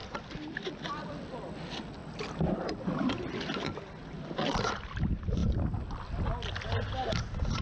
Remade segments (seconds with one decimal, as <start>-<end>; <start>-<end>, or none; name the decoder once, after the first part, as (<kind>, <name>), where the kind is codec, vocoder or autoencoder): none